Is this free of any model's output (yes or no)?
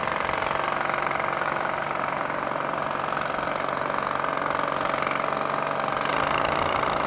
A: yes